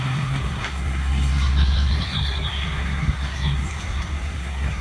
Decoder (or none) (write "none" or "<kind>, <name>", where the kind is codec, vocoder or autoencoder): codec, SNAC